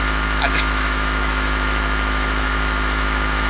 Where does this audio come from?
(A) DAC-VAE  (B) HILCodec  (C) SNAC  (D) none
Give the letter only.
A